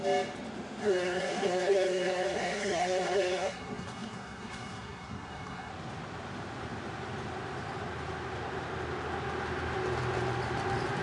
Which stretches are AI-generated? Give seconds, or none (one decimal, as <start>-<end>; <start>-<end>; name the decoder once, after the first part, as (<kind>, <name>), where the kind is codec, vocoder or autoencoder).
0.8-5.7 (codec, SNAC)